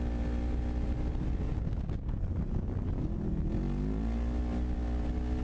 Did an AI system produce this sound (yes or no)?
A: no